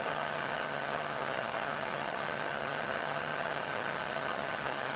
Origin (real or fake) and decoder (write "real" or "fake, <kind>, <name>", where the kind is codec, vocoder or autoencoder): fake, vocoder, HiFi-GAN